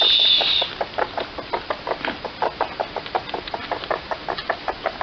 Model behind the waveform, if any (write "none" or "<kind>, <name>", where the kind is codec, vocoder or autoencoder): none